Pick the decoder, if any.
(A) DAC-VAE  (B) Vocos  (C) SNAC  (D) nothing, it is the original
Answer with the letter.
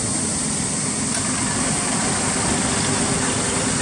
D